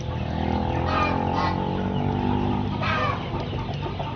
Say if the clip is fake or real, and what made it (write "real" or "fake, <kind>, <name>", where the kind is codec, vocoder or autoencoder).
real